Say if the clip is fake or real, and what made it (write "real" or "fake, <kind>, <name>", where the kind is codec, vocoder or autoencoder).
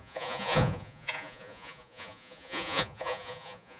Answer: fake, vocoder, Vocos